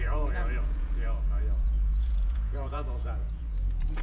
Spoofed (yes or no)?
yes